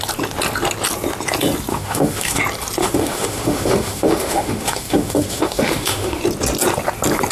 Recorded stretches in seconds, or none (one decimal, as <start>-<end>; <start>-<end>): 0.0-1.7; 2.4-2.8; 6.2-7.3